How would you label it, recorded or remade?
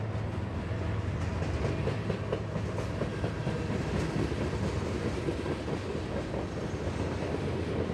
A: recorded